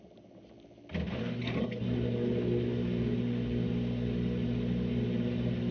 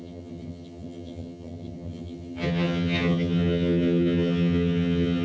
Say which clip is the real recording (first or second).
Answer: first